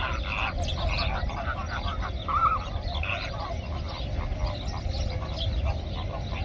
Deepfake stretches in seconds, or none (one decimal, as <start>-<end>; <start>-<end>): 2.4-3.1; 4.3-6.4